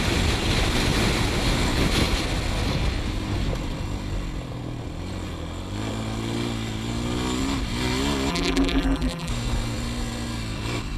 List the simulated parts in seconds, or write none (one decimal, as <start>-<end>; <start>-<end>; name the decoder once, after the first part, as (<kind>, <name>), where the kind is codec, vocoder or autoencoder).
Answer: 8.3-9.3 (vocoder, BigVGAN v2)